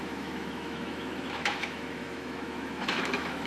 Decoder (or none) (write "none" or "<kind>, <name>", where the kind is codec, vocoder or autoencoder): autoencoder, DAC-VAE